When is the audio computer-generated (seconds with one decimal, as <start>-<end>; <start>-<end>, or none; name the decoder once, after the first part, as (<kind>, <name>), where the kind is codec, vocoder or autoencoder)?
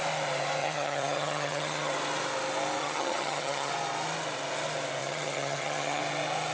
0.6-1.9 (vocoder, HiFi-GAN); 2.8-3.7; 5.0-6.0